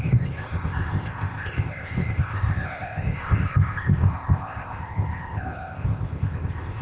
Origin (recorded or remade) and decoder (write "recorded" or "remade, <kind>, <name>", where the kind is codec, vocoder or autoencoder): remade, codec, ZipCodec